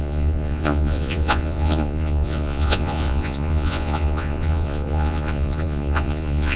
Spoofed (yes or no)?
yes